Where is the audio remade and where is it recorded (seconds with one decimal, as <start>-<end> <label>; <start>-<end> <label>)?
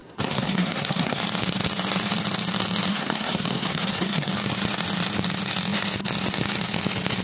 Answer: 0.0-1.2 remade; 1.2-2.9 recorded; 2.9-4.3 remade; 4.3-7.2 recorded